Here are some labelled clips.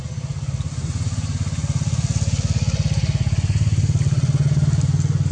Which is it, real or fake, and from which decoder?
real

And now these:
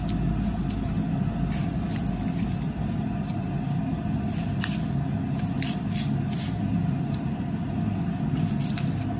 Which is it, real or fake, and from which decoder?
real